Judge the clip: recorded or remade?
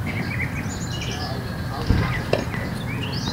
recorded